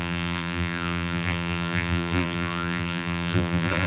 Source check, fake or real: fake